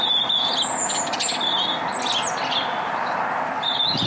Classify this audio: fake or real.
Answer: real